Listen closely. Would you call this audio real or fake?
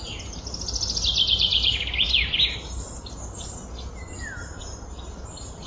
real